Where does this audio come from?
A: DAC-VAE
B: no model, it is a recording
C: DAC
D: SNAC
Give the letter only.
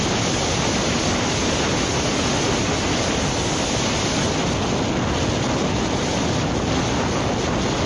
B